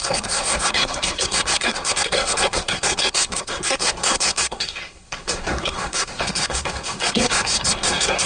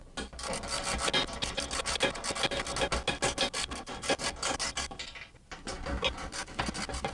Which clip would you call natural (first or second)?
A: second